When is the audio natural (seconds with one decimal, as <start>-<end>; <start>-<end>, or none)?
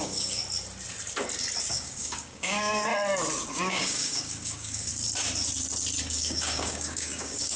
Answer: 0.4-1.6; 2.9-3.5; 4.9-6.1